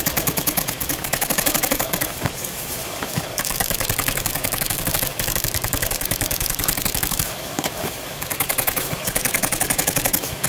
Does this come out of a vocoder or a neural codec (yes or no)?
yes